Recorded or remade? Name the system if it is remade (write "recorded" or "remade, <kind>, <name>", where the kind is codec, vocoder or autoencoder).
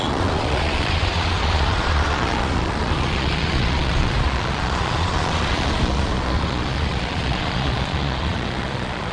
remade, vocoder, Vocos